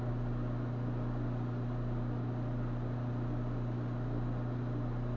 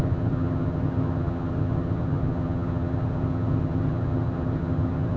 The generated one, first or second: second